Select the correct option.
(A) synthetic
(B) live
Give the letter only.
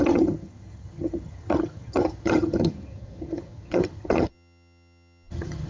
A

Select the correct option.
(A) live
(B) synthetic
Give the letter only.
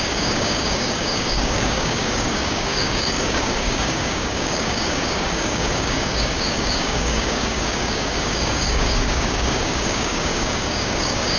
B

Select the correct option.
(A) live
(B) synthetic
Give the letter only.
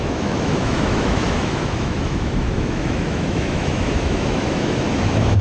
B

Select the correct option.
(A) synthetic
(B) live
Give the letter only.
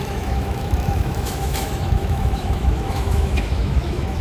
A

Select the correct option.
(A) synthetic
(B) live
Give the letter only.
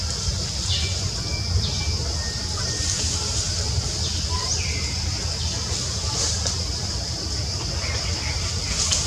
B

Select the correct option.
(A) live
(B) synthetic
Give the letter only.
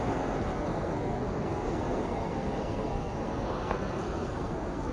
B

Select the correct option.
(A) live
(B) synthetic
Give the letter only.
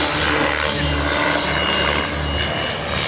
A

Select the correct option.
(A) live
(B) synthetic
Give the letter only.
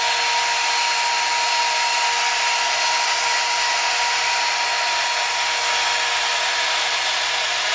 A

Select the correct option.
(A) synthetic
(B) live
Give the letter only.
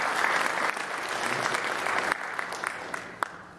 B